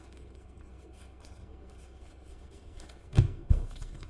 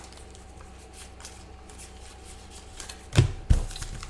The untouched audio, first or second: second